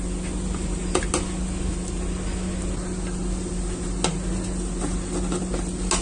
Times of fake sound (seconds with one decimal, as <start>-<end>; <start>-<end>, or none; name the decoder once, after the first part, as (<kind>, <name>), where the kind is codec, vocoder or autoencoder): none